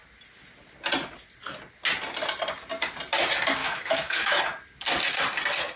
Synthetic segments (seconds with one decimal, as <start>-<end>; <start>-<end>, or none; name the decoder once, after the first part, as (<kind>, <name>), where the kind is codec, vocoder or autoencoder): 3.6-4.4 (autoencoder, DAC-VAE)